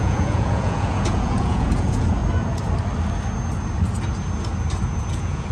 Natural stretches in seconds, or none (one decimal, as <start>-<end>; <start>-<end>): 2.2-5.1